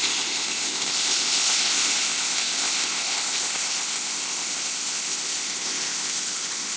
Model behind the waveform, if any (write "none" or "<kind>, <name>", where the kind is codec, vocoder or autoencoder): codec, ZipCodec